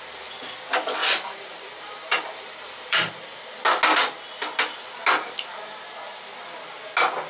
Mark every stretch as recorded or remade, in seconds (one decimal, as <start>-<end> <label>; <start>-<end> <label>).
0.0-1.0 recorded; 1.0-3.1 remade; 3.1-7.3 recorded